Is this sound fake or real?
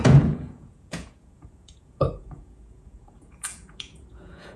fake